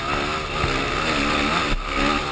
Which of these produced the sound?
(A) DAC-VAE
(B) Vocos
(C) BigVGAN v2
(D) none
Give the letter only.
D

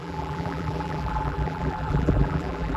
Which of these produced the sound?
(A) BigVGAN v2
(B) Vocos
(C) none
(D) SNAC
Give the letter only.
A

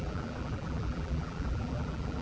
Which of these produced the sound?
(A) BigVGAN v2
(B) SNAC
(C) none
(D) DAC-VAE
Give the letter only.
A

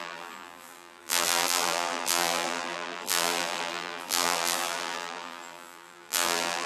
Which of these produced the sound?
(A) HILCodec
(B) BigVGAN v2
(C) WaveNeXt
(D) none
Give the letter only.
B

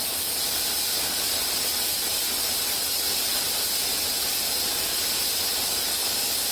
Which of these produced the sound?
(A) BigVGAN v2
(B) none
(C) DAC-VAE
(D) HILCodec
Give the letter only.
B